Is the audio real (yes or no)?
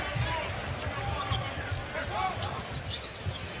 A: yes